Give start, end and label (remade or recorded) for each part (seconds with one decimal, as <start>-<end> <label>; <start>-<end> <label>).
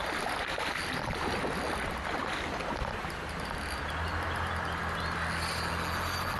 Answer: 0.0-6.4 recorded